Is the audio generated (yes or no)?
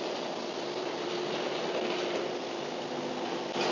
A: no